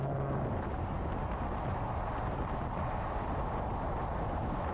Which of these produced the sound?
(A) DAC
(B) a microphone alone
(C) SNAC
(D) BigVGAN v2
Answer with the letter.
B